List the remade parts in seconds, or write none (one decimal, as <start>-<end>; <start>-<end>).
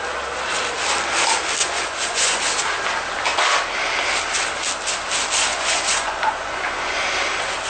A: 1.6-2.4; 5.5-7.0